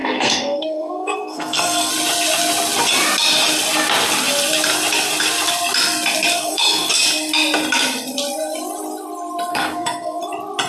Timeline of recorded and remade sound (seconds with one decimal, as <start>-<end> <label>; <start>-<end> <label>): 0.0-1.9 remade; 1.9-6.4 recorded; 6.4-6.9 remade; 6.9-9.5 recorded; 9.5-10.2 remade; 10.2-10.7 recorded